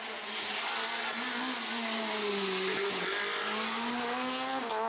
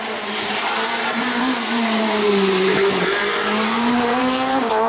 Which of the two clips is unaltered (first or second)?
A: first